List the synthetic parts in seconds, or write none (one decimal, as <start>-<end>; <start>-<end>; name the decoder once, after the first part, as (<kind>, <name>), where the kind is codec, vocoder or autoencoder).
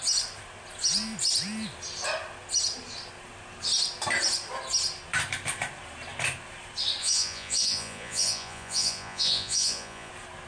7.0-10.1 (vocoder, Vocos)